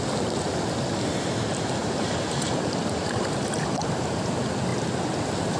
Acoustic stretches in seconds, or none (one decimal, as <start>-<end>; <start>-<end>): 0.0-1.8; 3.6-5.6